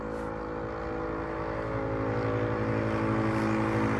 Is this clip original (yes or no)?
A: yes